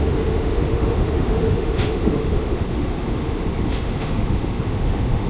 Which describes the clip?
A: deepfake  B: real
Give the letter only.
A